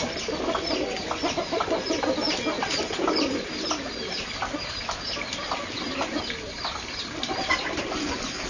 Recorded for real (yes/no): yes